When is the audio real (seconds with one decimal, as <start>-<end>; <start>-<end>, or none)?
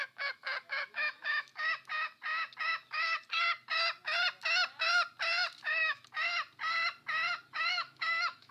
1.5-5.6; 6.0-7.5